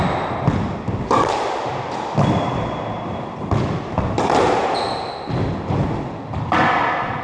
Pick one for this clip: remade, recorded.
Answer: recorded